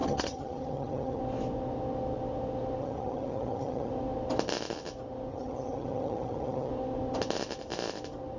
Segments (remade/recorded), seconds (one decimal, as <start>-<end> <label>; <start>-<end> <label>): 0.0-1.2 remade; 1.2-2.8 recorded; 2.8-3.9 remade; 3.9-5.3 recorded; 5.3-6.7 remade; 6.7-8.4 recorded